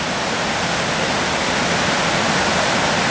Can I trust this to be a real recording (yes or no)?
yes